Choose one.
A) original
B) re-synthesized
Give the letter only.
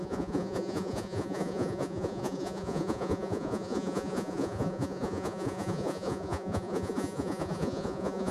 B